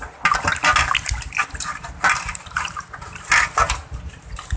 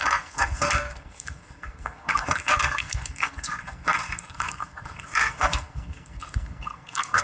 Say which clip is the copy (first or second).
second